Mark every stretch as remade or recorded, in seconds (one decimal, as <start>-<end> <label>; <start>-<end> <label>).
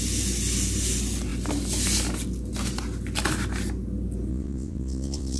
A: 0.0-4.3 recorded; 4.3-5.4 remade